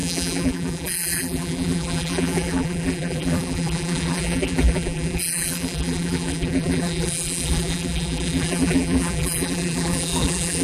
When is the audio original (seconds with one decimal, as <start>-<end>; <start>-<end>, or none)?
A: none